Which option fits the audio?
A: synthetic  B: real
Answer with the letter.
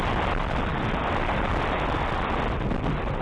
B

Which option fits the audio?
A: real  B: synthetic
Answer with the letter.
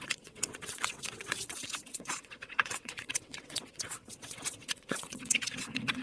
B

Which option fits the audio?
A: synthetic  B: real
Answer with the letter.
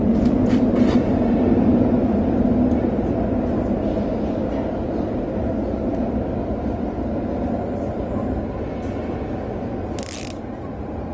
B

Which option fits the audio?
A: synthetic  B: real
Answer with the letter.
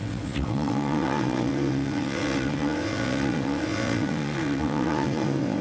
A